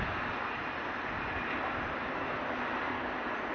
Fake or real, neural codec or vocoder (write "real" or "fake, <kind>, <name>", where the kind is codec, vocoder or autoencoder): real